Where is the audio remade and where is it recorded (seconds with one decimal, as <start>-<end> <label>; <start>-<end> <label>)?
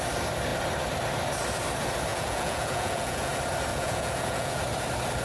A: 0.0-2.1 recorded; 2.1-3.3 remade; 3.3-3.7 recorded; 3.7-4.6 remade; 4.6-5.2 recorded